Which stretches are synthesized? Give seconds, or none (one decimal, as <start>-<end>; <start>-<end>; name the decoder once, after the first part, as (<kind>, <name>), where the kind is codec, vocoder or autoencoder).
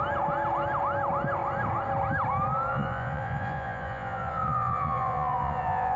2.7-6.0 (vocoder, Vocos)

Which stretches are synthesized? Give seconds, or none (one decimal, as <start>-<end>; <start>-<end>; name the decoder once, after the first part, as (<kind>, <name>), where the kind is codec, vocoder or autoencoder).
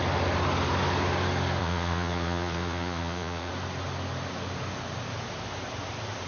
1.6-3.5 (vocoder, Vocos)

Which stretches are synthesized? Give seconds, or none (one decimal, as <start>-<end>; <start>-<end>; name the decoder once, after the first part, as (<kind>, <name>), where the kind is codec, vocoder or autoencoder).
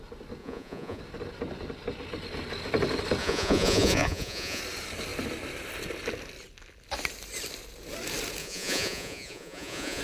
0.4-1.0 (vocoder, Vocos); 3.2-4.6; 8.4-10.0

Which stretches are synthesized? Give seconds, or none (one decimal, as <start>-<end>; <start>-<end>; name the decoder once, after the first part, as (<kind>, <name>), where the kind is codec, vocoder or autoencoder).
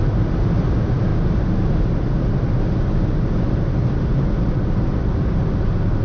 none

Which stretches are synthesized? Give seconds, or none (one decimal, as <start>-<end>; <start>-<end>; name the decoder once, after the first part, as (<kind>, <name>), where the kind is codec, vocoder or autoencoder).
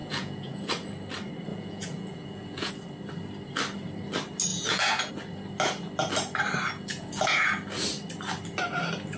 0.0-0.7 (vocoder, Vocos); 1.5-2.7; 4.5-5.1; 6.9-7.5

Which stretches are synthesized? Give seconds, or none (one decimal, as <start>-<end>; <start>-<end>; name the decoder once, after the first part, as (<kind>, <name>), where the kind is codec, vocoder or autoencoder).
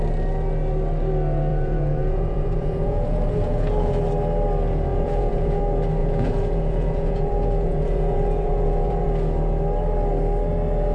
1.5-3.9 (vocoder, Vocos); 4.9-5.6; 6.0-9.1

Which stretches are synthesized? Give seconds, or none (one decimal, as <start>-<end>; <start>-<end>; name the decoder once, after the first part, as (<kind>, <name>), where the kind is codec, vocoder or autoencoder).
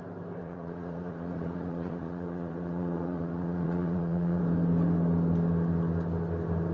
0.4-4.4 (vocoder, Vocos)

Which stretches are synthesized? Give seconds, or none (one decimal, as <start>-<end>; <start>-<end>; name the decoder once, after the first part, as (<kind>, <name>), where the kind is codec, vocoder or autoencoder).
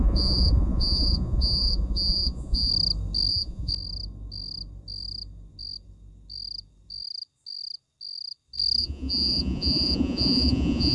0.0-2.7 (vocoder, Vocos); 3.3-3.7; 8.8-10.9